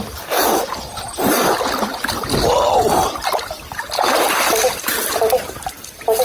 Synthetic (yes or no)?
no